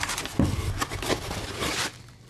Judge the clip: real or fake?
real